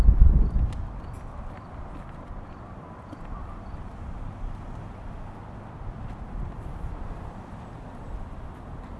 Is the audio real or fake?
real